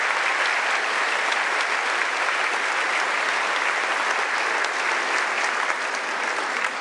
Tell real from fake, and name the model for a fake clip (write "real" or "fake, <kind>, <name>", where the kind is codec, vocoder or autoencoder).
real